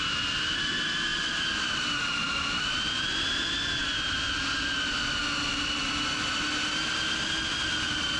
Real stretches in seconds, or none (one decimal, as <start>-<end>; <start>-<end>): 0.0-8.2